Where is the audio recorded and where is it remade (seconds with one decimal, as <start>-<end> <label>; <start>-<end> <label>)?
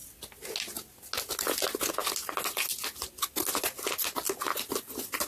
0.0-5.3 recorded